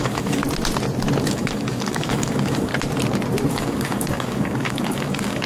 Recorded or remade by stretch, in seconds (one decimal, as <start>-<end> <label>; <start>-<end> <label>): 0.0-0.4 remade; 0.4-1.3 recorded; 1.3-2.7 remade; 2.7-3.5 recorded; 3.5-5.5 remade